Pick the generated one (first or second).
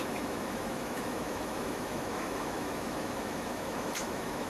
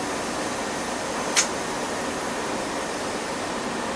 first